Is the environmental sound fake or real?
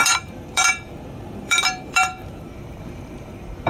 fake